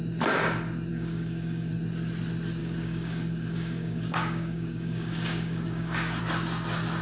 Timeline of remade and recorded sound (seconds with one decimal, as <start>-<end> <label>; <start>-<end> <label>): 0.0-0.9 recorded; 0.9-1.7 remade; 1.7-2.6 recorded; 2.6-6.2 remade; 6.2-7.0 recorded